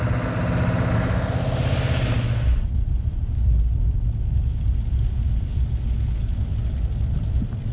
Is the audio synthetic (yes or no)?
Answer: no